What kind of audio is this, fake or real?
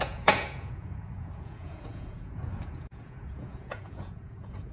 fake